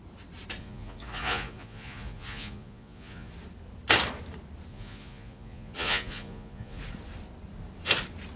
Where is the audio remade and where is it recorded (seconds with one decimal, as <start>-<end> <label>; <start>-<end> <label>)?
0.0-0.6 recorded; 0.6-3.3 remade; 3.3-4.7 recorded; 4.7-6.8 remade; 6.8-8.4 recorded